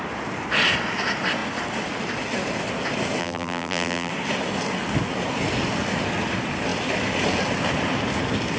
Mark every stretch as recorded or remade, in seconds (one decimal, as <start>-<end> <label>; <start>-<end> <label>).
0.0-3.2 recorded; 3.2-4.1 remade; 4.1-8.6 recorded